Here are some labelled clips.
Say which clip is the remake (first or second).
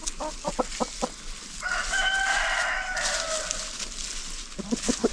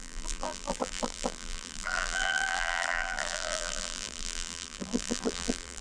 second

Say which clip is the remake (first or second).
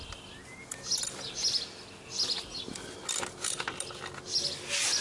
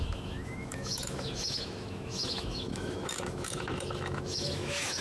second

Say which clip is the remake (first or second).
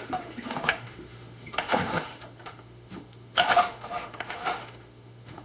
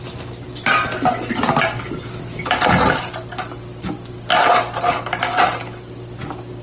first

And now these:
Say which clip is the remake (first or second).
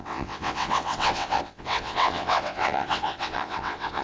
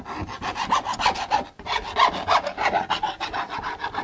first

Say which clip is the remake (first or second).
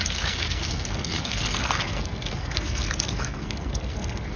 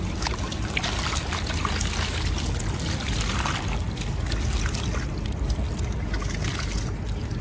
first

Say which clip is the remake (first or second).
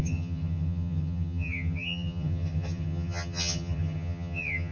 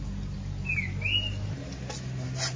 first